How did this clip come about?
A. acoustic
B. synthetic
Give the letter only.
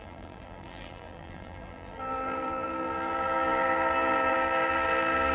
B